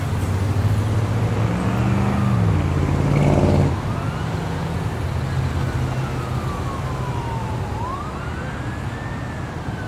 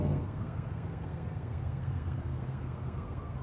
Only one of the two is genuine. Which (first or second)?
first